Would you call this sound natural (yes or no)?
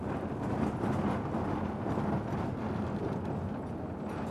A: yes